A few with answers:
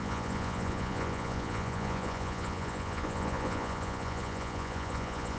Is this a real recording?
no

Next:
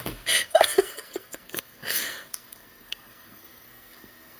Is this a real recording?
no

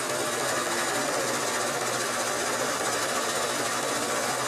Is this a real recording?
yes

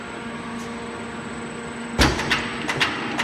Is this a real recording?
yes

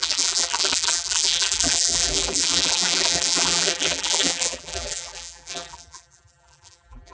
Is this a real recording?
no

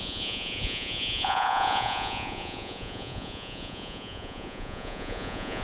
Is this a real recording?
no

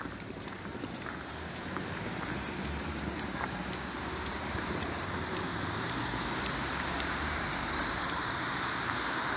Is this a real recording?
no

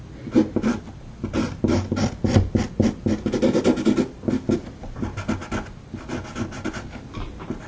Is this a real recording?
yes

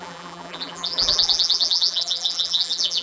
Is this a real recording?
no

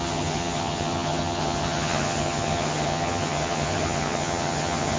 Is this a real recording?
no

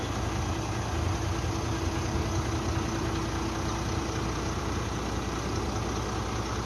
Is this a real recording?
yes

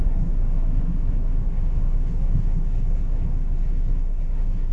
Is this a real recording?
no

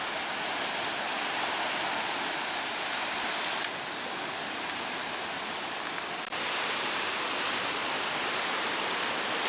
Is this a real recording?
yes